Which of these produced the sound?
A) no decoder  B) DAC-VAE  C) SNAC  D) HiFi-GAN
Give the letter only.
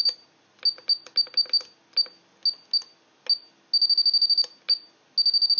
A